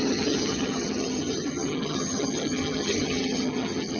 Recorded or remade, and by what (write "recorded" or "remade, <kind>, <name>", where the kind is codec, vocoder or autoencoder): remade, vocoder, HiFi-GAN